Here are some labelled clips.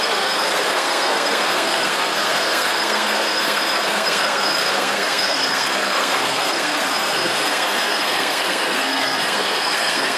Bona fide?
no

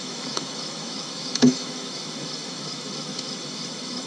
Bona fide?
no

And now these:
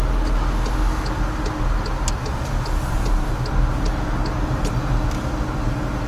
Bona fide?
yes